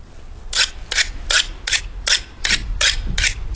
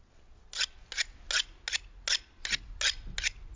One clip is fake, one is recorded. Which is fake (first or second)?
first